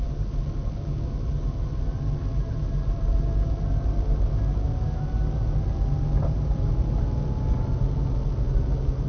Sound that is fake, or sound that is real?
real